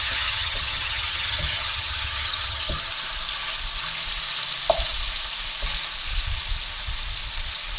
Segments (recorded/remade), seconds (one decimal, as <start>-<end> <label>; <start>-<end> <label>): 0.0-2.9 remade; 2.9-7.8 recorded